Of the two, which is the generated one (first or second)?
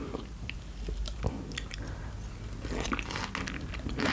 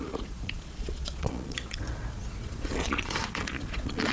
second